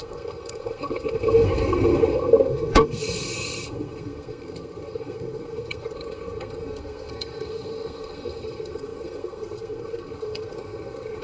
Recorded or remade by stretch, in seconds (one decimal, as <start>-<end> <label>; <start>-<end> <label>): 0.0-11.2 remade